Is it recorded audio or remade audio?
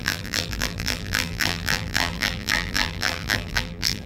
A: remade